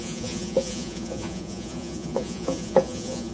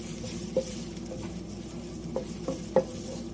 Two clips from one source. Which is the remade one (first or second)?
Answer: first